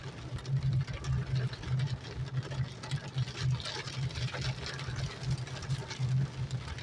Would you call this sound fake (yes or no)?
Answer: no